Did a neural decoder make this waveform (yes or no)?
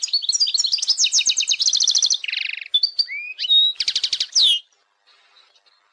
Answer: no